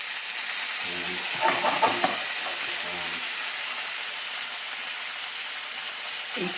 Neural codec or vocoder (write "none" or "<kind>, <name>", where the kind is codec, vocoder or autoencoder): none